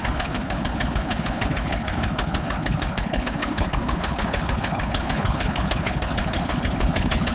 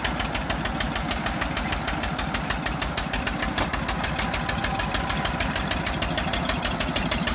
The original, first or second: second